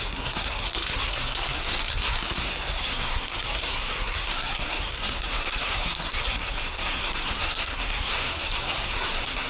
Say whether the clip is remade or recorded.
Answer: remade